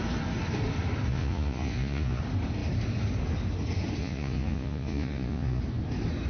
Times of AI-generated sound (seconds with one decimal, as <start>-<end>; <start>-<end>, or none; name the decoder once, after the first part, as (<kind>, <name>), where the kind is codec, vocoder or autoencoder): 1.1-2.2 (vocoder, Vocos); 4.0-5.6